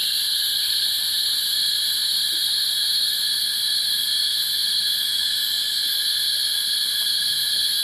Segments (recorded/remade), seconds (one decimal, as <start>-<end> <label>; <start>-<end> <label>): 0.0-3.3 remade; 3.3-7.8 recorded